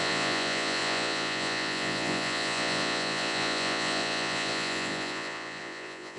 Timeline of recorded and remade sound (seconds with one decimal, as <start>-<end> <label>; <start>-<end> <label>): 0.0-6.2 remade